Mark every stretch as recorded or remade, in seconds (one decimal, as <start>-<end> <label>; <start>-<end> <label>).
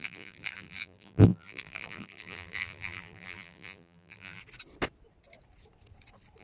0.0-4.4 remade; 4.4-6.4 recorded